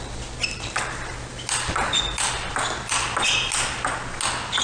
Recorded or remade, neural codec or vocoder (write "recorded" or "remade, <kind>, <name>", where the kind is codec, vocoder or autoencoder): recorded